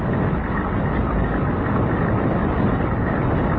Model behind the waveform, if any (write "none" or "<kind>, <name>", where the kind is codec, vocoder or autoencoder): none